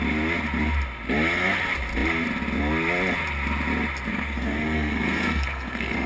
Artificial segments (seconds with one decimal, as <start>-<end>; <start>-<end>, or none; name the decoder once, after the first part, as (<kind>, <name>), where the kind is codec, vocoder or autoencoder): 4.1-6.1 (codec, SNAC)